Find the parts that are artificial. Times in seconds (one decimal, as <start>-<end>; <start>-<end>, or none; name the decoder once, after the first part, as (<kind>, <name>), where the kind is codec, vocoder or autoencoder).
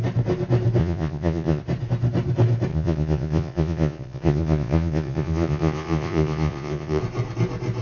0.8-1.6 (vocoder, Vocos); 2.7-7.0